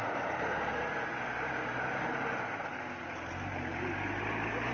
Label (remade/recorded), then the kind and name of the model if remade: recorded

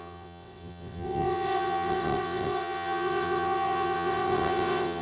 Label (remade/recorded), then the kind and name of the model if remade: remade, vocoder, WaveNeXt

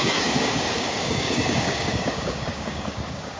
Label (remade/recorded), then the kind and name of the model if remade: remade, codec, DAC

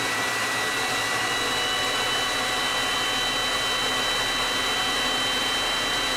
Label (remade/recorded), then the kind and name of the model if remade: recorded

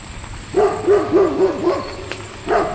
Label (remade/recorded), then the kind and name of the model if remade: recorded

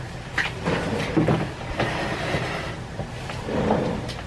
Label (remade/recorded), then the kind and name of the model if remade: recorded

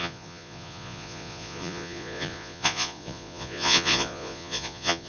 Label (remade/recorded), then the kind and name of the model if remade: remade, vocoder, Vocos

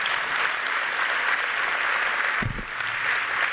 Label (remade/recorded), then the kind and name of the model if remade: recorded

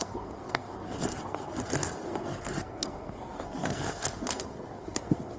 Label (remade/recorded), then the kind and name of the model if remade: remade, codec, SNAC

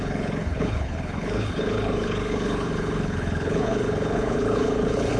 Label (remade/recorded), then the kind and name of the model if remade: remade, codec, HILCodec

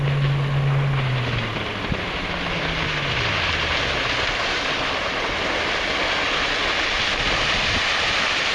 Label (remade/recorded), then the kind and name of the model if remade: recorded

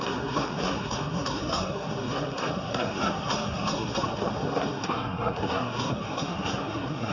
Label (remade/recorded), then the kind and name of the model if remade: remade, codec, SNAC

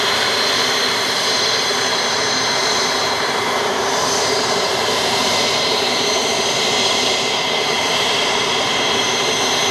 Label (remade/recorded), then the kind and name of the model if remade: remade, vocoder, BigVGAN v2